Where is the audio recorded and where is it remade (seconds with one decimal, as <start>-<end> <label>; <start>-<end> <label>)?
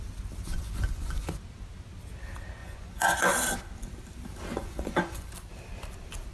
0.0-0.5 recorded; 0.5-1.4 remade; 1.4-2.6 recorded; 2.6-3.3 remade; 3.3-4.5 recorded; 4.5-5.3 remade; 5.3-6.3 recorded